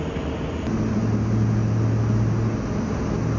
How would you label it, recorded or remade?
recorded